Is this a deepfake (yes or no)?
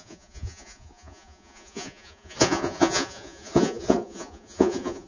yes